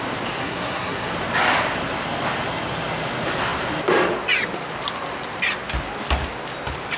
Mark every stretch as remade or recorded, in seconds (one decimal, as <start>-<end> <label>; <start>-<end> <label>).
0.0-0.4 recorded; 0.4-1.1 remade; 1.1-7.0 recorded